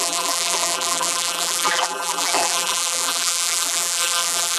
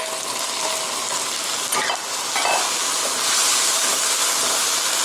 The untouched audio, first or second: second